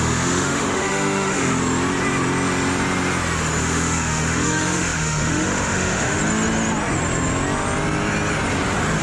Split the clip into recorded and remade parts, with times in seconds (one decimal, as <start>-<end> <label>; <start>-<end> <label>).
0.0-1.6 remade; 1.6-3.6 recorded; 3.6-6.2 remade; 6.2-9.0 recorded